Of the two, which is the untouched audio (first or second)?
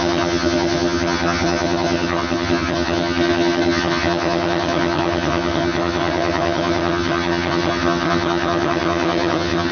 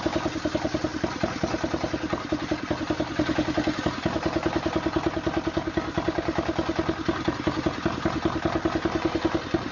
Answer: second